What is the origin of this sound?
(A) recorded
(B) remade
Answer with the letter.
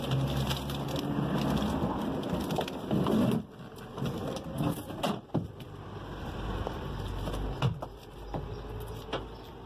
A